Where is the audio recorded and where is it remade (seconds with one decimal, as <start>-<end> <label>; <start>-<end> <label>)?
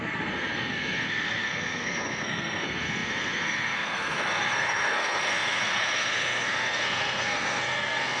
0.0-8.2 remade